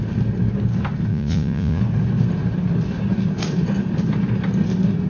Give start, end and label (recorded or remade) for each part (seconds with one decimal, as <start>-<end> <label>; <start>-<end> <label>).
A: 0.0-1.1 recorded; 1.1-1.8 remade; 1.8-5.1 recorded